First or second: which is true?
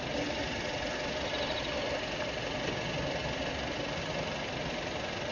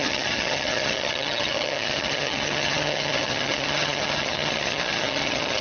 first